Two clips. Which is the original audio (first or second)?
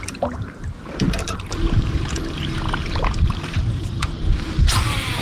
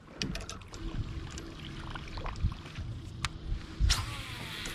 second